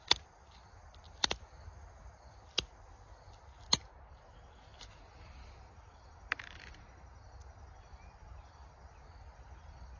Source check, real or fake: real